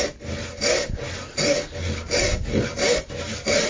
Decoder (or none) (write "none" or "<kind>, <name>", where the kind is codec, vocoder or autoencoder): none